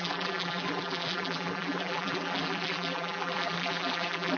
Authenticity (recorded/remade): remade